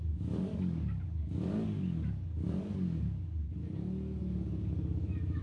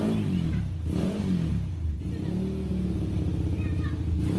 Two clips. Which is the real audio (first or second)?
second